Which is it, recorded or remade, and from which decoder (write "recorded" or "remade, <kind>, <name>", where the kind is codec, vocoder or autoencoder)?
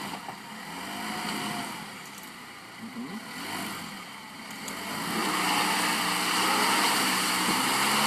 recorded